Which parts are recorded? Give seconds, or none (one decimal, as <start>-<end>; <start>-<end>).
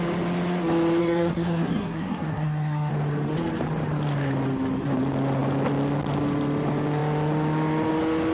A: 0.0-1.0; 2.9-8.3